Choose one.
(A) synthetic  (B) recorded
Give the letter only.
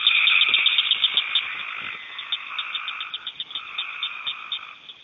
B